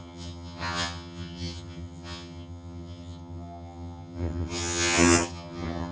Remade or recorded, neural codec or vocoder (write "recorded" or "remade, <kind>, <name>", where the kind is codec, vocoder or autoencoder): remade, vocoder, HiFi-GAN